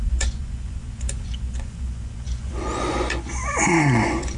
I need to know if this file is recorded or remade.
remade